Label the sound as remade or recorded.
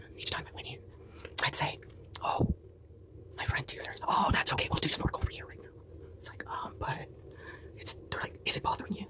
recorded